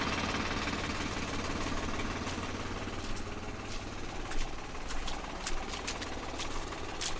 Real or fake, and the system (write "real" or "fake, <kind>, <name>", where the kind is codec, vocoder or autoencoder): real